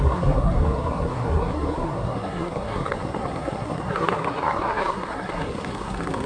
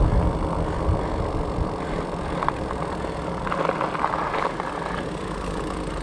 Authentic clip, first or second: second